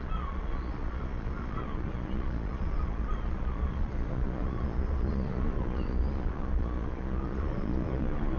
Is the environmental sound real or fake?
fake